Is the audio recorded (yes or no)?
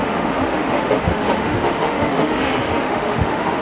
no